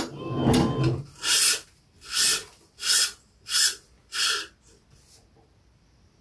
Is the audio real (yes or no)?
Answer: yes